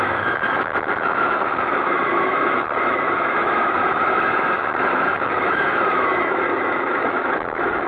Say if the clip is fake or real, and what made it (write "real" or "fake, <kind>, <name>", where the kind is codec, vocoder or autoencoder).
fake, autoencoder, DAC-VAE